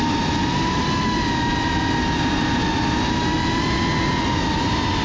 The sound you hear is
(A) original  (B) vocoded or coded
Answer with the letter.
A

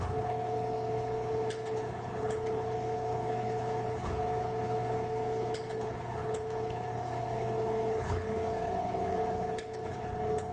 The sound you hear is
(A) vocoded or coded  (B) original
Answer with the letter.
A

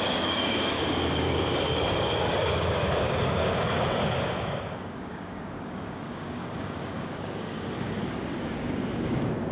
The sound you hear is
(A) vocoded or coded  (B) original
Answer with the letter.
A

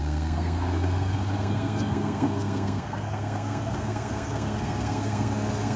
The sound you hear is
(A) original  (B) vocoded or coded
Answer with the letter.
B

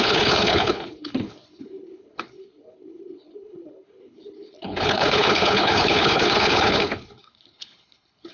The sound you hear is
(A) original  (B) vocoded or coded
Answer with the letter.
B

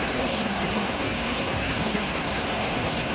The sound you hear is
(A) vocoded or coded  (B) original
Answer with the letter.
A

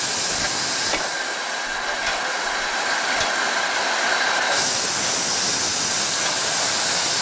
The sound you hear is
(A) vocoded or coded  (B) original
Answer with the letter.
B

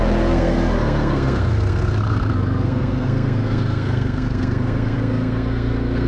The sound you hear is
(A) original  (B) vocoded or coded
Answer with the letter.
B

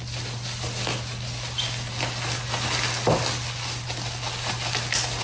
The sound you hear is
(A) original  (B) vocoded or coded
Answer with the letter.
A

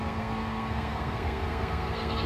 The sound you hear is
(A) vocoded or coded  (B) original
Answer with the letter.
A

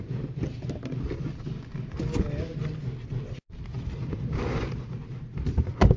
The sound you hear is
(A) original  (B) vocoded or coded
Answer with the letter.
A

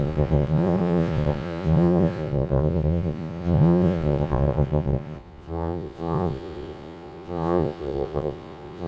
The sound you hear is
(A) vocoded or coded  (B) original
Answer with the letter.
A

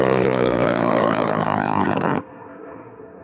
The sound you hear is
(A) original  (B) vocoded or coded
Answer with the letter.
B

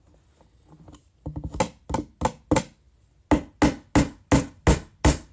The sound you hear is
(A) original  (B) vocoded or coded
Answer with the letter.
A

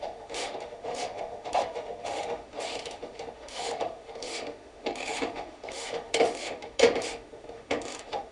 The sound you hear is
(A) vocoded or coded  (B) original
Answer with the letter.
A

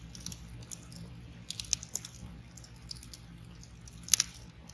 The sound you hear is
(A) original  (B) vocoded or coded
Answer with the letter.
A